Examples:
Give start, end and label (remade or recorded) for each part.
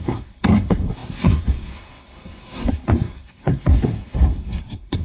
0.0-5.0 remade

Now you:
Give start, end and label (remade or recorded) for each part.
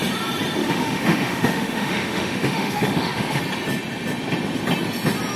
0.0-0.6 recorded; 0.6-3.4 remade; 3.4-5.4 recorded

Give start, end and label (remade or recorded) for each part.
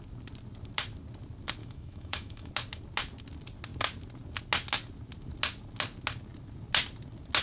0.0-1.6 recorded; 1.6-2.5 remade; 2.5-7.4 recorded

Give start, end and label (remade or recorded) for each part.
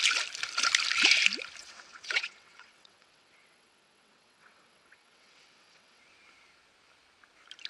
0.0-1.6 recorded; 1.6-6.0 remade; 6.0-7.7 recorded